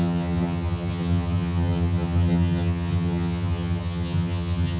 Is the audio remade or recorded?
remade